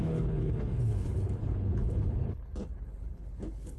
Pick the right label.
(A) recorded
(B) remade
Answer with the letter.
B